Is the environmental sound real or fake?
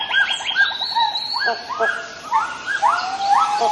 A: real